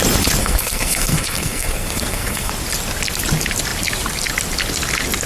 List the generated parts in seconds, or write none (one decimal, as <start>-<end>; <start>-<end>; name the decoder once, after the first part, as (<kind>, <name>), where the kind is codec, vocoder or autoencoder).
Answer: 0.4-2.5 (codec, SNAC)